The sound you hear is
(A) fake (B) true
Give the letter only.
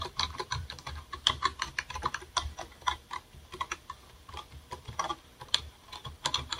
A